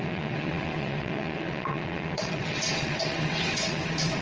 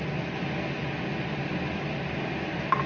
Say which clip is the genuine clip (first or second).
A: second